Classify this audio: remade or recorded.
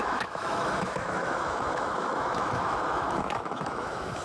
remade